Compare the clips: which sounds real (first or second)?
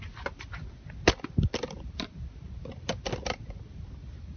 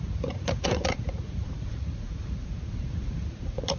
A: first